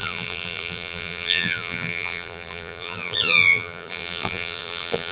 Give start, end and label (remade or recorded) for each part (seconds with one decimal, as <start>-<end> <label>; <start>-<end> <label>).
0.0-5.1 remade